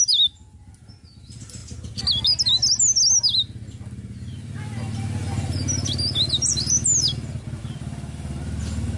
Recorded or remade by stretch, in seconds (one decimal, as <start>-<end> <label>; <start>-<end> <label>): 0.0-9.0 recorded